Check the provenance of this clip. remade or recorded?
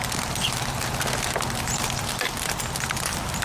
recorded